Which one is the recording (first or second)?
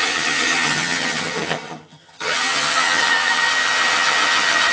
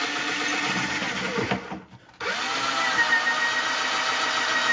second